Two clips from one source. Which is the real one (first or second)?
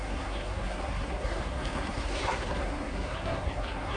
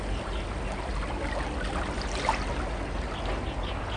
second